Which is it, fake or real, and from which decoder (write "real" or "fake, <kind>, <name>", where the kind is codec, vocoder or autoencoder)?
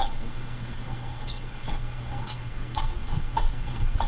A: fake, codec, SNAC